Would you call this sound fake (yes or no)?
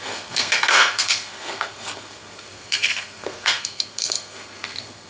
yes